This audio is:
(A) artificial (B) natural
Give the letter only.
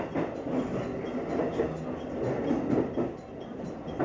B